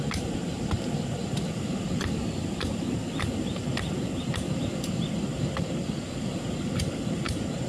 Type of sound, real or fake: real